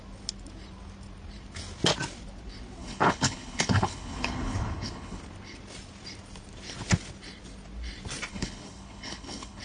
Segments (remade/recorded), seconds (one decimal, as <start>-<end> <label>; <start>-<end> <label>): 0.0-2.8 recorded; 2.8-5.2 remade; 5.2-8.3 recorded; 8.3-9.6 remade